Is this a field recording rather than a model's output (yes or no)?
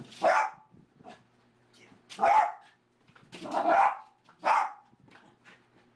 yes